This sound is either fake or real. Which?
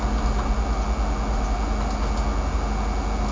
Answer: real